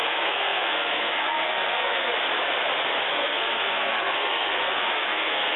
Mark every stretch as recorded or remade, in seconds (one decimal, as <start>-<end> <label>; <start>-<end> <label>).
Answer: 0.0-2.1 remade; 2.1-3.1 recorded; 3.1-5.6 remade